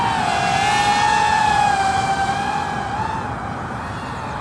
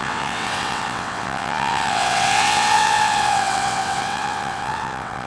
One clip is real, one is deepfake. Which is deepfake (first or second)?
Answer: second